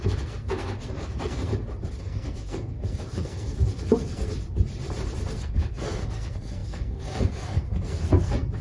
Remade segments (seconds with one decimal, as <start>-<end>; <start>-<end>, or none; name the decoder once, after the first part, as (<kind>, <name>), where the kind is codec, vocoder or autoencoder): 0.0-1.5 (codec, SNAC); 2.0-4.3; 5.3-8.6